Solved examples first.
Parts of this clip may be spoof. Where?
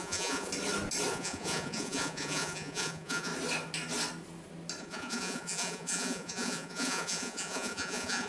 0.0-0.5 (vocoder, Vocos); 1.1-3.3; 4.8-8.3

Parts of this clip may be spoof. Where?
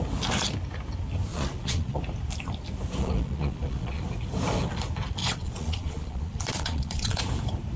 1.3-2.0 (vocoder, Vocos); 3.0-4.0; 5.2-7.2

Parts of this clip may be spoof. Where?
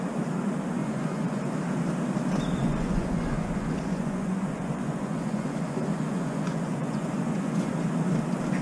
0.8-1.5 (vocoder, Vocos); 2.6-7.7